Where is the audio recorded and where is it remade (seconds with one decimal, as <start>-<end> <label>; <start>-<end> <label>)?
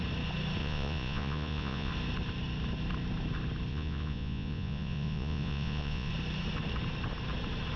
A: 0.0-0.6 recorded; 0.6-1.9 remade; 1.9-3.7 recorded; 3.7-6.1 remade; 6.1-7.8 recorded